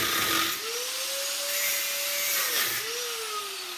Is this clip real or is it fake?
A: real